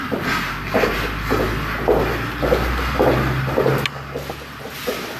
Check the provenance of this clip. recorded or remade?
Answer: recorded